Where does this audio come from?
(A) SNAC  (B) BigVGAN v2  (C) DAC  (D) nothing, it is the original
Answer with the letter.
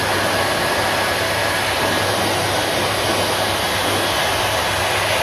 D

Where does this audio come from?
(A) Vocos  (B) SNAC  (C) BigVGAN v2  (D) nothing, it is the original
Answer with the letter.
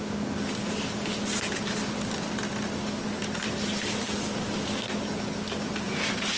D